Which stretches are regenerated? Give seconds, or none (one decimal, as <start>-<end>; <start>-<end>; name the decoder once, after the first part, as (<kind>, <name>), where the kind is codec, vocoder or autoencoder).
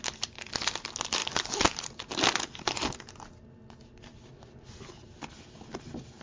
none